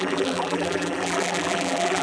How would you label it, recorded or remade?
remade